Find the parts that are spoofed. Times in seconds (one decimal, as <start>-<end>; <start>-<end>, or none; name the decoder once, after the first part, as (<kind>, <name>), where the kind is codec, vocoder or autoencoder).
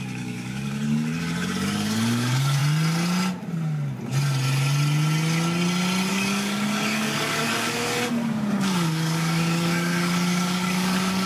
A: 0.0-2.6 (codec, DAC); 6.1-11.3